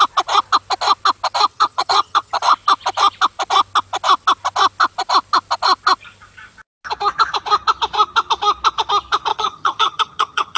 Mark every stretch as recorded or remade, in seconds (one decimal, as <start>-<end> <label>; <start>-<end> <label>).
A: 0.0-1.5 recorded; 1.5-2.4 remade; 2.4-9.3 recorded; 9.3-10.6 remade